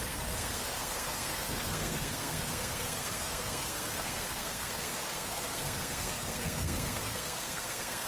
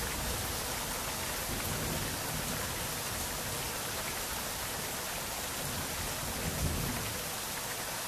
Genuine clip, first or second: second